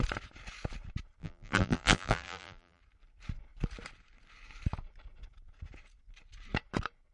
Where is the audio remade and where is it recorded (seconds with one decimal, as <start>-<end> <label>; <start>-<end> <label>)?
0.0-1.2 recorded; 1.2-2.8 remade; 2.8-7.1 recorded

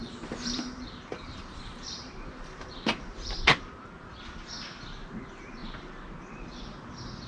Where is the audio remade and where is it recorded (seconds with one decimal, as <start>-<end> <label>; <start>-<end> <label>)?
0.0-3.3 remade; 3.3-7.3 recorded

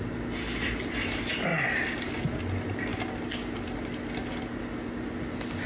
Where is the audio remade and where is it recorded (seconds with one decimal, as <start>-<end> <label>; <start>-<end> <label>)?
0.0-5.7 recorded

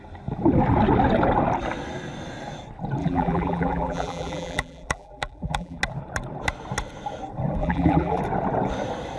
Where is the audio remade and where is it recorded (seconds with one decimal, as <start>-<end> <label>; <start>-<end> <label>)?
0.0-3.0 recorded; 3.0-5.8 remade; 5.8-7.6 recorded; 7.6-8.2 remade; 8.2-9.2 recorded

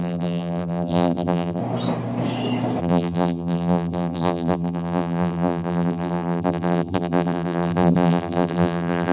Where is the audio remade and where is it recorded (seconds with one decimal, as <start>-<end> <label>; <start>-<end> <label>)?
0.0-1.6 remade; 1.6-2.8 recorded; 2.8-9.1 remade